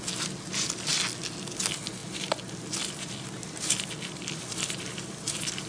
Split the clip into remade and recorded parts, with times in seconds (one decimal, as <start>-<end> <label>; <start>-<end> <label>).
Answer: 0.0-2.0 recorded; 2.0-5.7 remade